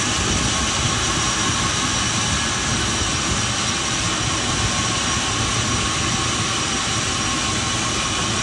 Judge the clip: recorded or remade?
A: recorded